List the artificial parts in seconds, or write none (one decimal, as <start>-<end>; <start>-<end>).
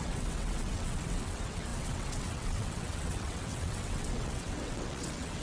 0.0-5.4